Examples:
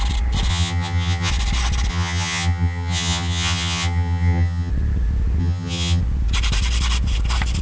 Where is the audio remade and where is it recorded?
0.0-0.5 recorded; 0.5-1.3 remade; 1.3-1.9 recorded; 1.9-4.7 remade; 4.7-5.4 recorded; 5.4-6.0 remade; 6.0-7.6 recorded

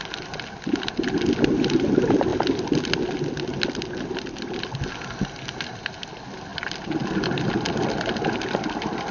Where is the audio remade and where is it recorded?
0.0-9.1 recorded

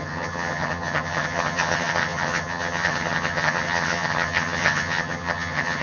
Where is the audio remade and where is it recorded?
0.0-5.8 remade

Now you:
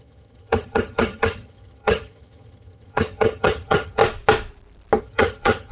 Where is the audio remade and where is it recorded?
0.0-4.0 remade; 4.0-5.0 recorded; 5.0-5.7 remade